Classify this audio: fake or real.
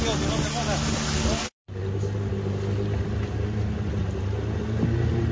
real